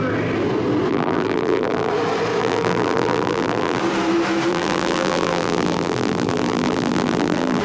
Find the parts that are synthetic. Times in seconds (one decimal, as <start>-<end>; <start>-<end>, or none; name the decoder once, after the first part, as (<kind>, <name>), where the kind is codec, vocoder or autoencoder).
0.9-1.9 (vocoder, BigVGAN v2); 2.4-3.8; 4.5-7.6